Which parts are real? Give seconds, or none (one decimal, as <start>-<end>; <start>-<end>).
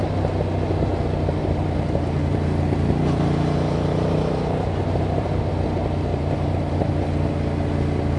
0.0-1.4; 5.5-6.1; 6.9-8.2